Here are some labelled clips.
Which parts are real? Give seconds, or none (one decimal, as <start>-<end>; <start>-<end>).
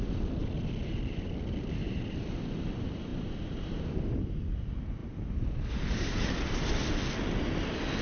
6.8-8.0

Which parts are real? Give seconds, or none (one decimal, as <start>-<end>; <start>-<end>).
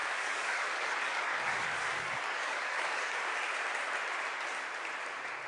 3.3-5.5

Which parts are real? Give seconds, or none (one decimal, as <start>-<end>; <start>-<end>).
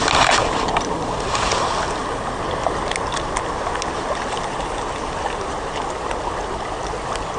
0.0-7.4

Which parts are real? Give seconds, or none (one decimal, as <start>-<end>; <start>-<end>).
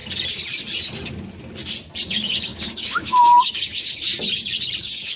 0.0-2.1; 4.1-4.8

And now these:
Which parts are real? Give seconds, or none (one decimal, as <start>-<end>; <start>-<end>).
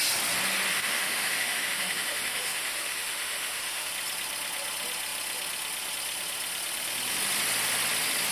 0.0-0.7; 3.9-8.3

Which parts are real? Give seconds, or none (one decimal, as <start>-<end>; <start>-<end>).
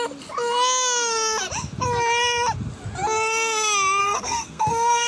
0.0-4.0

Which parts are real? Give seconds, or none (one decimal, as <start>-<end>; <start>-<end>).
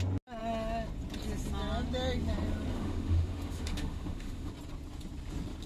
0.0-2.7; 4.5-5.7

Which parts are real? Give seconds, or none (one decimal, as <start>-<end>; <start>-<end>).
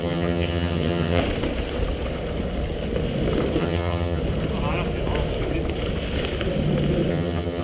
1.2-3.6; 4.2-7.1